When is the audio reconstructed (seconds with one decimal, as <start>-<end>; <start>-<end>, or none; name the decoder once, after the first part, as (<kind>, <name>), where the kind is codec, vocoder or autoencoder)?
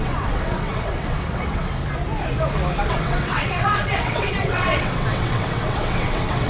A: 0.0-1.8 (vocoder, WaveNeXt); 2.9-6.5